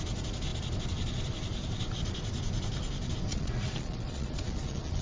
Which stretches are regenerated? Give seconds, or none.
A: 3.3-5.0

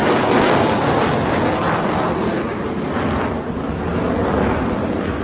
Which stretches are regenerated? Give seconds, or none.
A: none

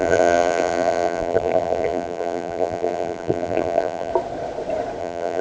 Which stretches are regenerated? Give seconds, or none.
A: 0.0-4.1; 5.0-5.4

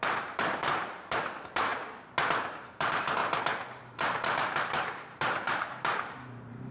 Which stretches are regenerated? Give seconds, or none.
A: 0.0-1.7; 2.6-3.2; 3.8-6.7

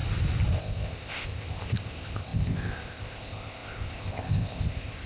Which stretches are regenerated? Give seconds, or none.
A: 0.6-5.1

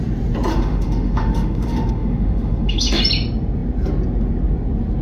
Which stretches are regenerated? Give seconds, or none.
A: 0.5-3.0

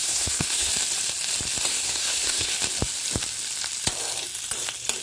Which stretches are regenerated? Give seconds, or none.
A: 0.0-0.7; 1.7-2.5

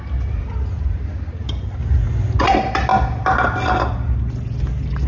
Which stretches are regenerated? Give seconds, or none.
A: none